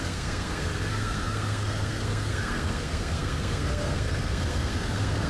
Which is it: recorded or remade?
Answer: remade